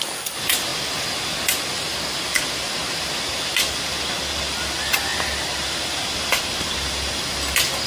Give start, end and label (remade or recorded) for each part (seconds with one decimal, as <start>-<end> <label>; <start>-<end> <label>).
0.0-7.9 recorded